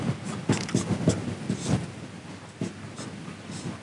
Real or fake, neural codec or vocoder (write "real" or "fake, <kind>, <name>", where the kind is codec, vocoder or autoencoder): real